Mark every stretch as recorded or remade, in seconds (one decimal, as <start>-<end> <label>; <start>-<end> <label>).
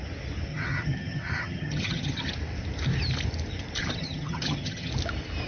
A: 0.0-0.5 recorded; 0.5-2.3 remade; 2.3-3.8 recorded; 3.8-4.9 remade; 4.9-5.5 recorded